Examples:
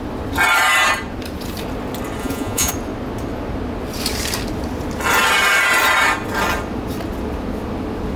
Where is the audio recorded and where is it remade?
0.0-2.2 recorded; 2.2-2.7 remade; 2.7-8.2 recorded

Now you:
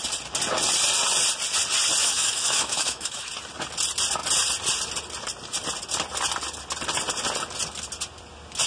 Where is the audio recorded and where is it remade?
0.0-2.0 recorded; 2.0-3.3 remade; 3.3-8.7 recorded

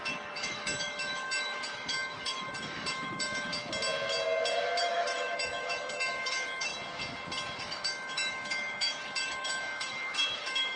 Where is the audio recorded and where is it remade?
0.0-3.5 remade; 3.5-4.8 recorded; 4.8-6.7 remade; 6.7-7.6 recorded; 7.6-10.8 remade